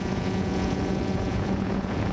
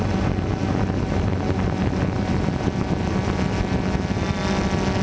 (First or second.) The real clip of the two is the second